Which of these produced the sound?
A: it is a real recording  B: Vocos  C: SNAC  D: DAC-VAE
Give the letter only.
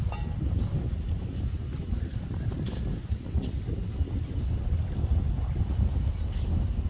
A